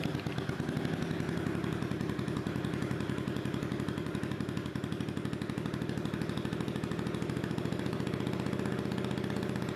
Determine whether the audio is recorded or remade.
recorded